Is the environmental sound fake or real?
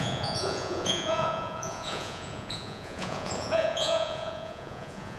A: fake